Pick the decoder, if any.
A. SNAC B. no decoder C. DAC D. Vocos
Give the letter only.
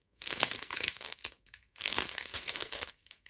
A